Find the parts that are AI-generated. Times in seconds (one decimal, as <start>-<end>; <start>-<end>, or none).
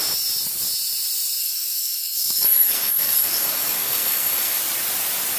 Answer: 1.4-4.6